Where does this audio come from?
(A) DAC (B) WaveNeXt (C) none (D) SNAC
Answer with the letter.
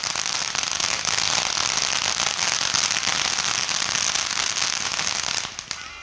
C